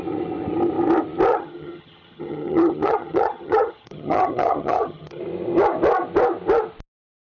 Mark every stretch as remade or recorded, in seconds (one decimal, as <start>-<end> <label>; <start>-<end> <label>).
0.0-1.3 recorded; 1.3-5.2 remade; 5.2-7.2 recorded

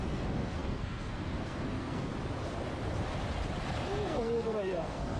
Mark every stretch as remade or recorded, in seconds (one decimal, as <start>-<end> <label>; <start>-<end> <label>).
0.0-2.1 remade; 2.1-3.8 recorded; 3.8-5.2 remade

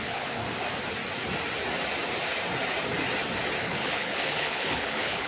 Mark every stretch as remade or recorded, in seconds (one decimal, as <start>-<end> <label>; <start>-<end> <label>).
0.0-0.4 remade; 0.4-3.6 recorded; 3.6-5.3 remade

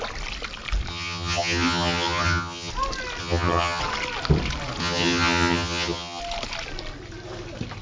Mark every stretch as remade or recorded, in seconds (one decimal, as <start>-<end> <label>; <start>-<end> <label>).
0.0-0.9 recorded; 0.9-2.7 remade; 2.7-3.2 recorded; 3.2-3.8 remade; 3.8-4.8 recorded; 4.8-6.2 remade; 6.2-7.8 recorded

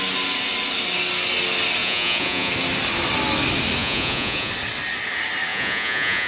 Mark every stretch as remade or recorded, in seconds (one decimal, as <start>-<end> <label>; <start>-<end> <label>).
0.0-1.8 recorded; 1.8-2.5 remade; 2.5-3.8 recorded; 3.8-4.5 remade; 4.5-5.5 recorded; 5.5-6.3 remade

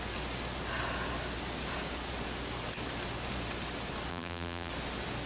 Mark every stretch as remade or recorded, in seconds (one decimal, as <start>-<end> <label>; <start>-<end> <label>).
0.0-4.1 recorded; 4.1-4.7 remade; 4.7-5.3 recorded